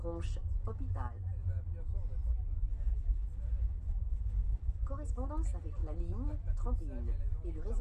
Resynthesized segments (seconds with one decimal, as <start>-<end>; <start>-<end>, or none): none